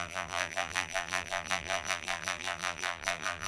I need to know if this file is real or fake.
fake